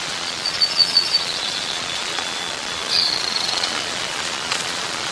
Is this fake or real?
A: fake